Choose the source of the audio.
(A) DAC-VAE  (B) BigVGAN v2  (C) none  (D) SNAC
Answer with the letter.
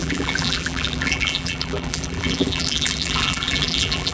B